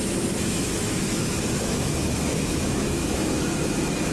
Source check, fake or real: fake